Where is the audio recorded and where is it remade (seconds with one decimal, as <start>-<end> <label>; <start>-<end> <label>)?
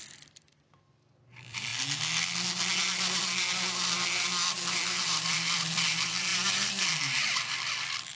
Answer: 0.0-1.7 remade; 1.7-2.8 recorded; 2.8-8.1 remade